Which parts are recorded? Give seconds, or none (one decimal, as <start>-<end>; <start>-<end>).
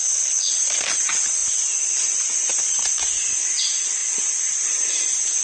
0.5-5.4